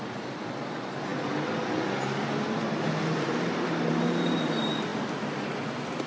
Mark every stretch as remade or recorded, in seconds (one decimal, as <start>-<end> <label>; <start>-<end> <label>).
0.0-6.1 recorded